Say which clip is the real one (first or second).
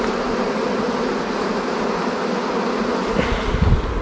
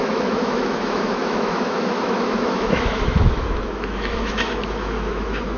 first